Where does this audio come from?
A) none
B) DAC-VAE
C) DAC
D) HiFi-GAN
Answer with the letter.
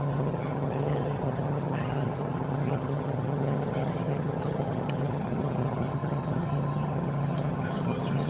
D